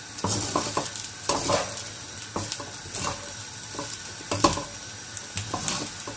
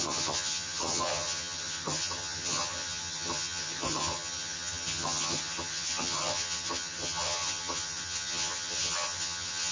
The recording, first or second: first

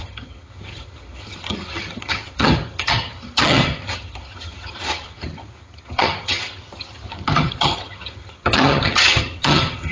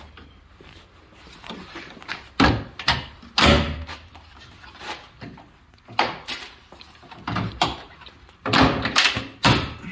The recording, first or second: second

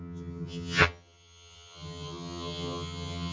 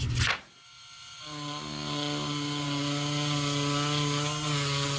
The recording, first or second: second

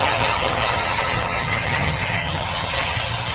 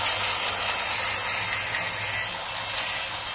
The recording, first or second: second